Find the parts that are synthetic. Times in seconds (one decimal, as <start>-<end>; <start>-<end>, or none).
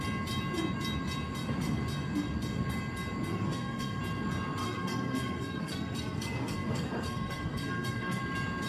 3.3-4.0; 4.6-8.2